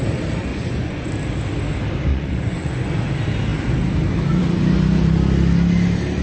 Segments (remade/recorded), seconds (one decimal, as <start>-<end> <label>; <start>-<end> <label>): 0.0-0.5 recorded; 0.5-1.1 remade; 1.1-2.1 recorded; 2.1-2.9 remade; 2.9-6.2 recorded